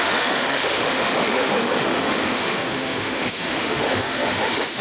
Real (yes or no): no